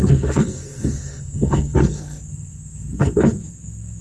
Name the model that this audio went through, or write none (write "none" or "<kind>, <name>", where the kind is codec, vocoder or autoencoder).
codec, SNAC